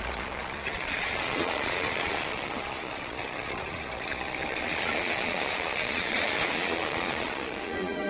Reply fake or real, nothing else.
fake